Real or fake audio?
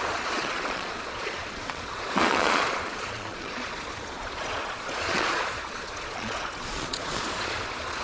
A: fake